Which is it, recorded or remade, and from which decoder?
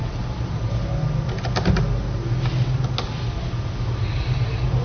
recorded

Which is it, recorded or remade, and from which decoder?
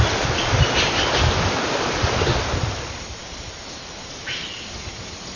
recorded